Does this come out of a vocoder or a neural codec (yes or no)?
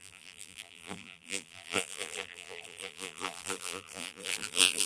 yes